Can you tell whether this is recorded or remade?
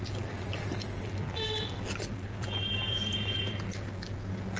remade